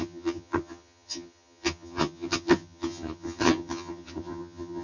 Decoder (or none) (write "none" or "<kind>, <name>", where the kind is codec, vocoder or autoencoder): vocoder, HiFi-GAN